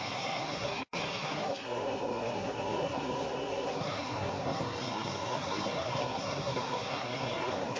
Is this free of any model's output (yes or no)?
no